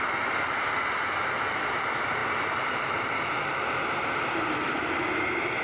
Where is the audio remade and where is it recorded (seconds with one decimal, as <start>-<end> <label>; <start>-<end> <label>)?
0.0-5.6 recorded